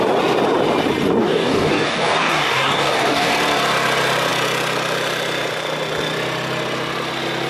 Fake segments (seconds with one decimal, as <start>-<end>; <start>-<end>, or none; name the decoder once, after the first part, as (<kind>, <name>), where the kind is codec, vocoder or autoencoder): 1.2-3.3 (codec, DAC)